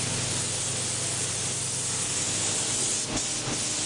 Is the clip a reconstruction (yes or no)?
no